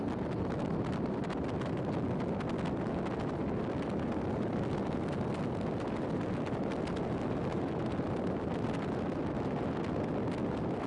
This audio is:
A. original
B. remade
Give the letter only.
A